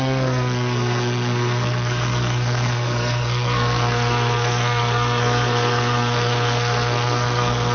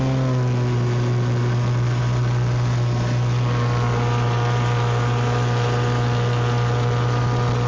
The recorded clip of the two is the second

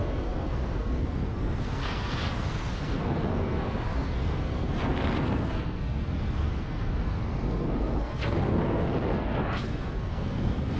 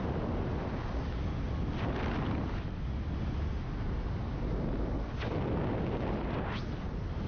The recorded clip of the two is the second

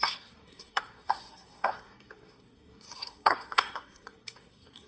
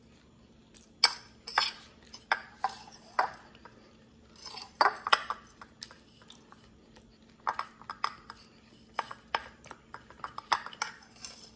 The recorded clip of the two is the second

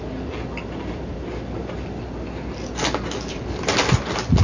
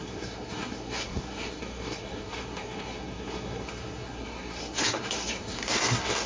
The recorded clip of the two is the first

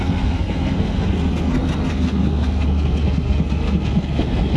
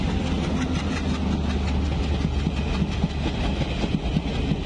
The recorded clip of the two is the second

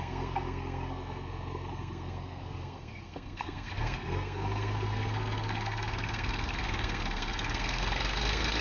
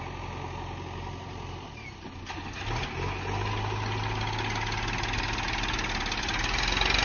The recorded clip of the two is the second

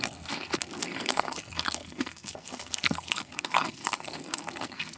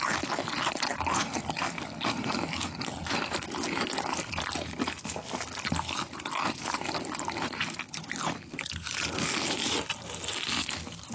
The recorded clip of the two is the second